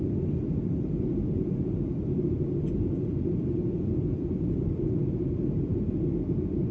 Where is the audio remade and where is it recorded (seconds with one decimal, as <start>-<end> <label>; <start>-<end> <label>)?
0.0-6.7 recorded